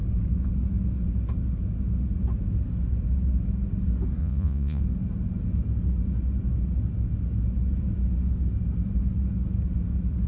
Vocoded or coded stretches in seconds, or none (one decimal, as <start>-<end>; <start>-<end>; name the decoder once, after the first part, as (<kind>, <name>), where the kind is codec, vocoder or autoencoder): 4.2-4.8 (vocoder, Vocos)